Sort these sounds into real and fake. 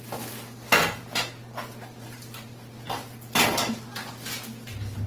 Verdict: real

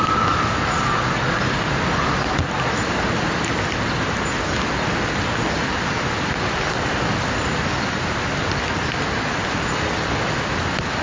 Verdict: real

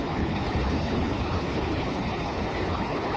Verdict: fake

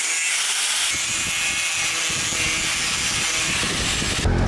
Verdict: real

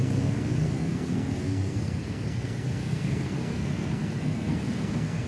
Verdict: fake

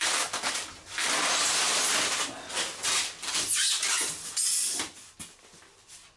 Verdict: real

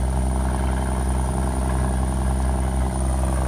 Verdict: real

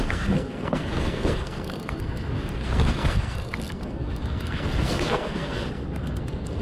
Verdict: fake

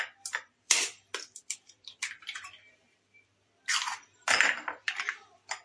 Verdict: fake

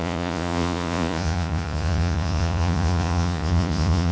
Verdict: fake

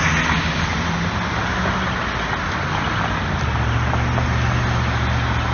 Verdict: real